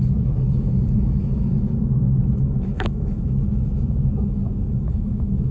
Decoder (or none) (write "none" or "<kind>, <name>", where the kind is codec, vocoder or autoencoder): autoencoder, DAC-VAE